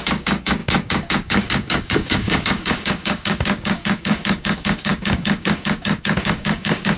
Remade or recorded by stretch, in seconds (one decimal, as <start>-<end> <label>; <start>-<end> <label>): 0.0-7.0 remade